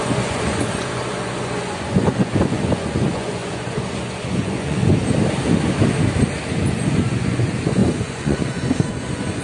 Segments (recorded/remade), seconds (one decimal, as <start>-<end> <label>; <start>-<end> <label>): 0.0-4.8 remade; 4.8-6.6 recorded; 6.6-9.4 remade